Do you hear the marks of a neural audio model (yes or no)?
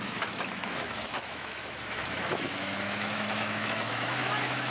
yes